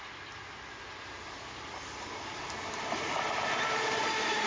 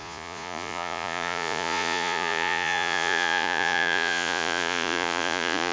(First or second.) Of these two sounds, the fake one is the second